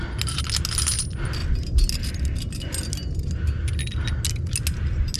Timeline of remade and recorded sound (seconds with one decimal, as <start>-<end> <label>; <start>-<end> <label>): 0.0-5.2 recorded